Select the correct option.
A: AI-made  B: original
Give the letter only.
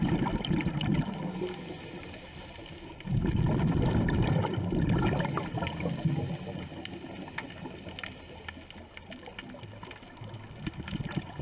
B